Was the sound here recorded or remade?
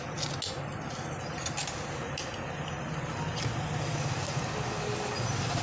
recorded